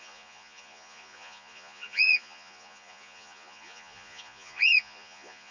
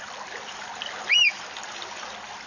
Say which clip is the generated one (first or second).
first